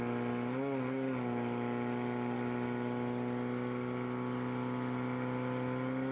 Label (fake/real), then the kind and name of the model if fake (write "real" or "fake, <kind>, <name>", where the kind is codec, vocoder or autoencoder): real